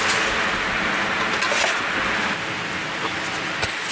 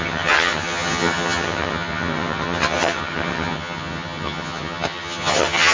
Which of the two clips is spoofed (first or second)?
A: second